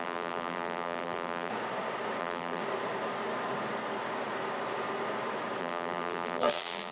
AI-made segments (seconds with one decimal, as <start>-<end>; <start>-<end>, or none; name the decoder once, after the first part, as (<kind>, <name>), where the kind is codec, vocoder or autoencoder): 0.0-1.5 (vocoder, BigVGAN v2); 2.2-2.6; 5.6-6.9